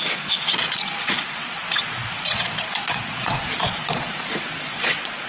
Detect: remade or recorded remade